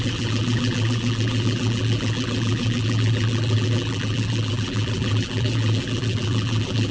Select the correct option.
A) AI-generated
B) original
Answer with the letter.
A